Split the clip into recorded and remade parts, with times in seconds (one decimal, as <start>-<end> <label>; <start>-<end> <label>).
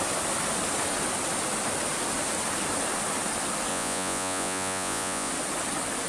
0.0-3.7 recorded; 3.7-5.3 remade; 5.3-6.1 recorded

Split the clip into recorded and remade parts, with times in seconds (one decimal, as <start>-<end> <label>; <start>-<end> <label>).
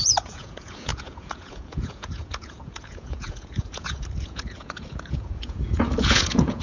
0.0-6.6 remade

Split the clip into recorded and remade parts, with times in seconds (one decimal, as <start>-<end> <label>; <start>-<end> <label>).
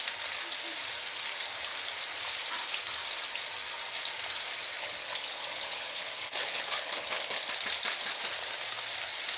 0.0-4.8 recorded; 4.8-7.5 remade; 7.5-9.4 recorded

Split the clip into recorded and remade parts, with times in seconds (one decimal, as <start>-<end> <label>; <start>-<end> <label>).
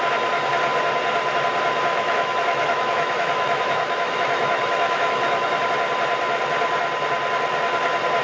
0.0-1.9 recorded; 1.9-5.7 remade; 5.7-8.2 recorded